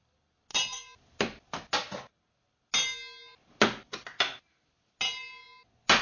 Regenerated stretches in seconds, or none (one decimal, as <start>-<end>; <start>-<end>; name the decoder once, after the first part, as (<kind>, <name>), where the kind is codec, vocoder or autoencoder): none